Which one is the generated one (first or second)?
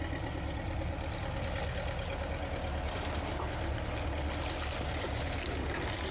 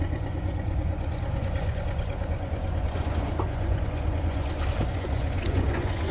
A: second